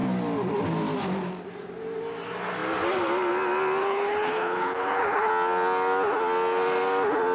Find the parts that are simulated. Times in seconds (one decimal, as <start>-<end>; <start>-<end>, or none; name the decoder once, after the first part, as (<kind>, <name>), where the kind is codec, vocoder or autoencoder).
3.8-5.3 (codec, HILCodec)